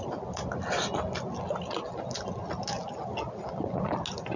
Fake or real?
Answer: real